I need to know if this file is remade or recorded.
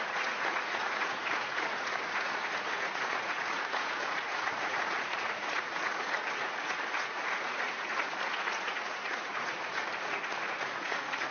remade